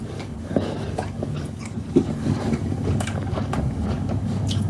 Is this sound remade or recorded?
remade